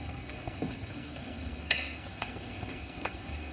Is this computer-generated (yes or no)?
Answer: yes